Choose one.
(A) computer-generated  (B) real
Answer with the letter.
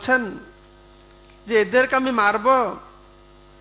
B